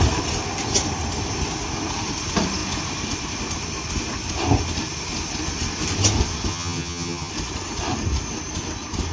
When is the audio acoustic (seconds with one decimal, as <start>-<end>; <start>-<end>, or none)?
0.0-6.5; 7.3-9.1